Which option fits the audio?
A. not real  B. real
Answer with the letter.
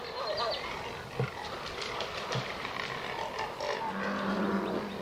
B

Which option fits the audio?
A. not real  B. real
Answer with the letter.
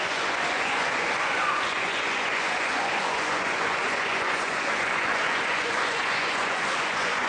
A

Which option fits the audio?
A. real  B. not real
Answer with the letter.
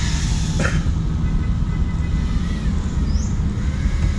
A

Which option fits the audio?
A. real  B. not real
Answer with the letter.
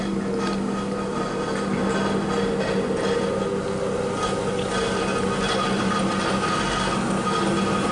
A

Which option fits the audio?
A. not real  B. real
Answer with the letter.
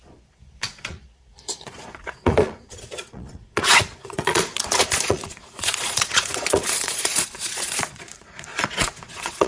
A